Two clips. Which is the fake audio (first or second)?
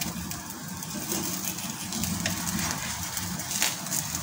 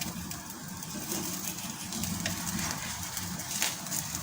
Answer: second